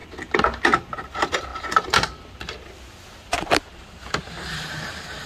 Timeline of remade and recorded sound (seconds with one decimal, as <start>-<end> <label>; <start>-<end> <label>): 0.0-5.3 recorded